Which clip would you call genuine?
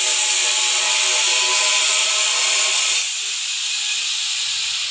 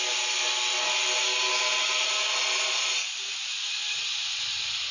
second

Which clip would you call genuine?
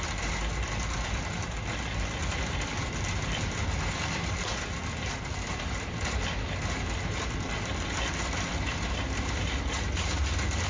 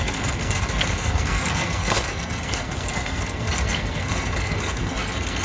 first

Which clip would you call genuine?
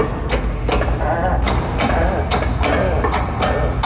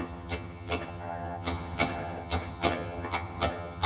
first